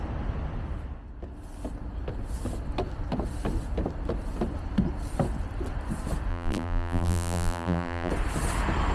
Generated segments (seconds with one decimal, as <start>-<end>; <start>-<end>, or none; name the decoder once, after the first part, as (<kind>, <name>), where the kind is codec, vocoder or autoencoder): 6.3-8.1 (vocoder, BigVGAN v2)